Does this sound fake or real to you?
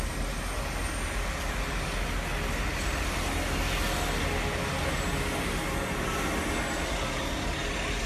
real